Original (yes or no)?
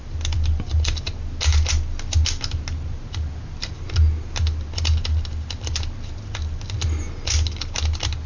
yes